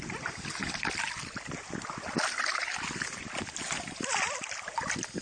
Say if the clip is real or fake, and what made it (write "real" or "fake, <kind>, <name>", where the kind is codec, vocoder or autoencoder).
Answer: real